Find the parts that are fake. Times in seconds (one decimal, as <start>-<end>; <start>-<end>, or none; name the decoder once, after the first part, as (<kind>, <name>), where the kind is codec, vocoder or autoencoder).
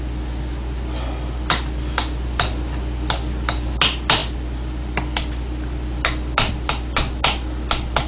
none